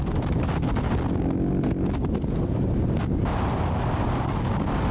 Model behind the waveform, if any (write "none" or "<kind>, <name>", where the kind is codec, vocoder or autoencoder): none